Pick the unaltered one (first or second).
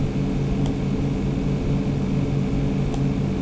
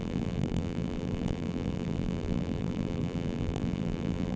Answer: first